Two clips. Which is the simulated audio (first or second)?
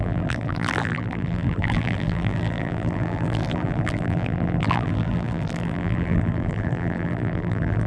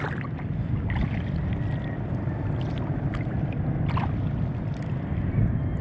first